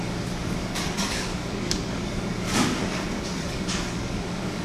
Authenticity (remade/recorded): remade